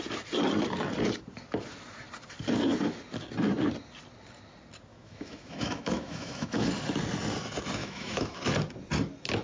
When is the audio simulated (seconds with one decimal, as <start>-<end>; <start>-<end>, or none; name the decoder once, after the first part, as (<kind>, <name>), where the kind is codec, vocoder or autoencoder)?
4.9-6.7 (autoencoder, DAC-VAE); 7.8-8.4